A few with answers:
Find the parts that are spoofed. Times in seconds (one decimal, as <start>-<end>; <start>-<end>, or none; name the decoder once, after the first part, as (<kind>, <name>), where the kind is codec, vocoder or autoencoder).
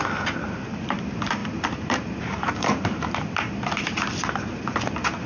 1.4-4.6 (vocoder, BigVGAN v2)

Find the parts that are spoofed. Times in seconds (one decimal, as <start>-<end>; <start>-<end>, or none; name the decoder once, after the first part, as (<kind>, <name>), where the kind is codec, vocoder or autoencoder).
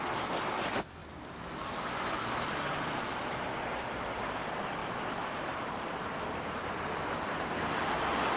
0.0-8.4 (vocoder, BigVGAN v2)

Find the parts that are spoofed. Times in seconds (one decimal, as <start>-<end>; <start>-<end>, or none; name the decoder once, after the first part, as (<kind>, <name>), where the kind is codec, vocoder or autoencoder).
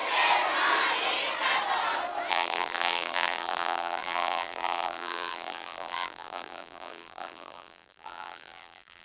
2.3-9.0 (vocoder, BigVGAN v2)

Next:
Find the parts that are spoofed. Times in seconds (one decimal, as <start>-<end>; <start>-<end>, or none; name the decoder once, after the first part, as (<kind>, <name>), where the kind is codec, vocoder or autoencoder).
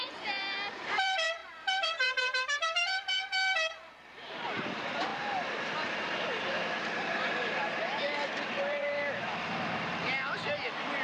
0.0-5.1 (vocoder, BigVGAN v2); 7.0-11.0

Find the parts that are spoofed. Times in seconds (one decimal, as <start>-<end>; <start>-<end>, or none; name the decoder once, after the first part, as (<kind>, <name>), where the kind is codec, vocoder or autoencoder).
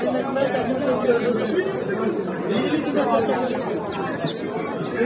0.0-5.0 (vocoder, BigVGAN v2)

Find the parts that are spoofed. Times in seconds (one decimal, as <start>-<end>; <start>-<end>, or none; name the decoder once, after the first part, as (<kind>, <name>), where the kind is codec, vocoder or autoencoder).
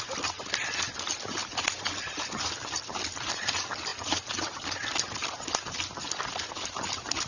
0.0-3.9 (vocoder, BigVGAN v2); 6.5-7.3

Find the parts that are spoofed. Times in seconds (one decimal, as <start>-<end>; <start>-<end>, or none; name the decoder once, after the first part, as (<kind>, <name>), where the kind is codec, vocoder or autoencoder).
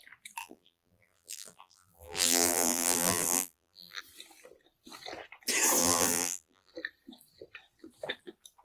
0.4-4.0 (vocoder, BigVGAN v2); 5.8-6.7